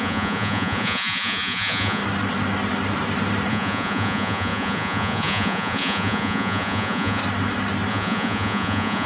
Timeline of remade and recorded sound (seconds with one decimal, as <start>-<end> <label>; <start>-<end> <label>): 0.0-2.0 remade; 2.0-3.5 recorded; 3.5-7.2 remade; 7.2-7.9 recorded; 7.9-9.1 remade